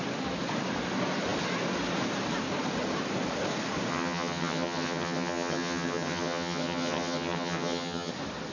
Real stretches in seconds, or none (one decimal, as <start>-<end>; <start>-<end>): 0.0-3.9; 8.1-8.5